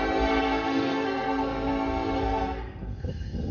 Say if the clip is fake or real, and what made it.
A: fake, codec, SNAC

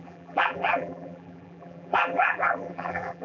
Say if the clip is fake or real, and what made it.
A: fake, vocoder, BigVGAN v2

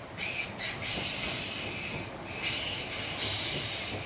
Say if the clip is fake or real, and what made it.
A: real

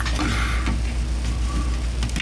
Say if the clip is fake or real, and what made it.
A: real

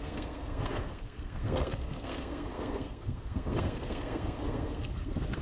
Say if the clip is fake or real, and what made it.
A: fake, codec, SNAC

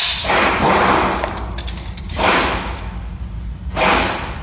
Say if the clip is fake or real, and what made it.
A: real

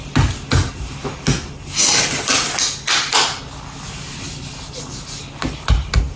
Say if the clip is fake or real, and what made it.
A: real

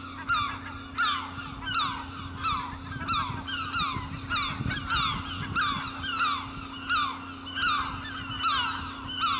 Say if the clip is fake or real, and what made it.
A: real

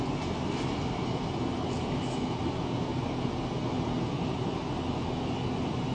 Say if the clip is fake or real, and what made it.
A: real